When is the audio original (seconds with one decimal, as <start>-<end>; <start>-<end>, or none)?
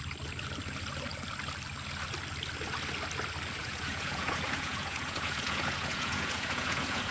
0.0-3.6